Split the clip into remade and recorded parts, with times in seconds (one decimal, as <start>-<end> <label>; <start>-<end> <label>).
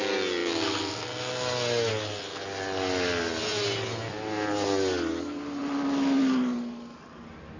0.0-7.6 recorded